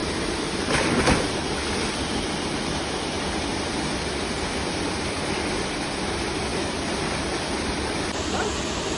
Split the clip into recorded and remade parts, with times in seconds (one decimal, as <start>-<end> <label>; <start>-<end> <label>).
0.0-9.0 recorded